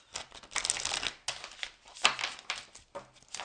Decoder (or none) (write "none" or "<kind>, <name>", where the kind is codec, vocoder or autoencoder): none